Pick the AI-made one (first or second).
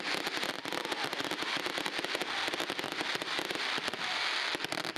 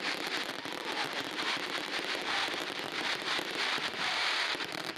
second